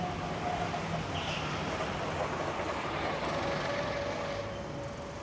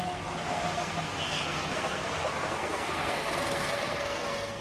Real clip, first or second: first